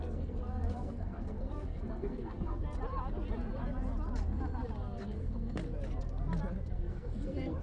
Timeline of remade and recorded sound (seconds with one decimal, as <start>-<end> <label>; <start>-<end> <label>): 0.0-2.6 remade; 2.6-5.0 recorded; 5.0-5.6 remade; 5.6-6.7 recorded; 6.7-7.6 remade